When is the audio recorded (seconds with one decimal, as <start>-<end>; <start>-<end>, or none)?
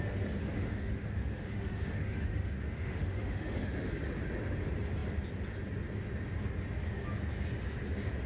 0.0-0.4; 3.9-8.3